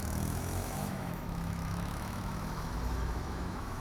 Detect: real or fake fake